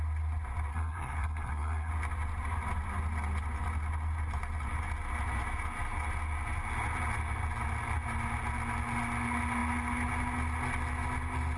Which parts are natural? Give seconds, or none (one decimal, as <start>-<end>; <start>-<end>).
0.0-0.7; 1.9-11.6